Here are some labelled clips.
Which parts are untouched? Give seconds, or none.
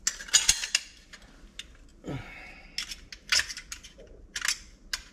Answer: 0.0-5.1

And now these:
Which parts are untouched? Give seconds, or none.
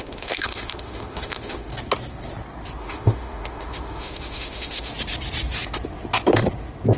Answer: 1.7-2.8; 4.9-7.0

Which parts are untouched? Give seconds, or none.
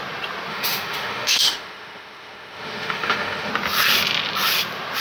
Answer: 0.0-0.5; 3.5-5.0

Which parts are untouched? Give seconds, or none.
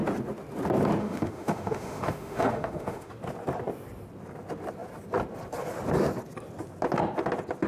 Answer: 0.0-1.0; 3.1-7.7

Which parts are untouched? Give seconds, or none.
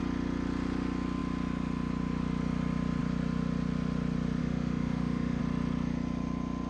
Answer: 0.0-4.4; 5.4-6.7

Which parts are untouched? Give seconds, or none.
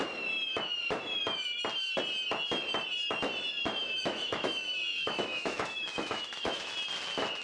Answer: 0.0-3.8; 6.7-7.4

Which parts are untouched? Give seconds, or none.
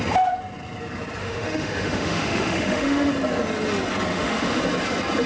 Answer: 0.0-1.2; 3.1-4.1; 4.6-5.3